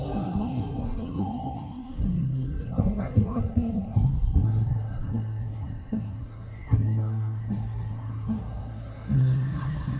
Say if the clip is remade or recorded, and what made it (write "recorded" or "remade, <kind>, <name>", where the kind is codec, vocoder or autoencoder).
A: remade, codec, SNAC